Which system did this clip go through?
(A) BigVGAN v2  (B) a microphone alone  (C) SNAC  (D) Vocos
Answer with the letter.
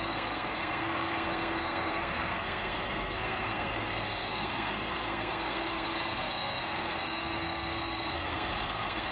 C